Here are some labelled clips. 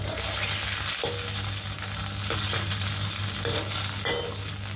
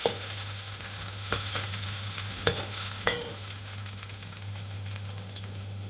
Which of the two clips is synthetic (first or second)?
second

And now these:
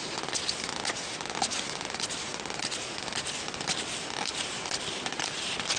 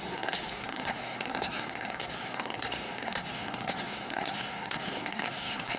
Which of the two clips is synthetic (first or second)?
second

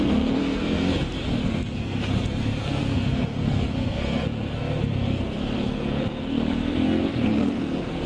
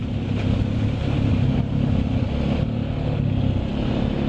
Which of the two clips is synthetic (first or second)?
first